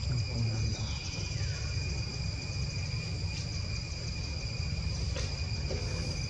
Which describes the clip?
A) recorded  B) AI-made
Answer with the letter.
A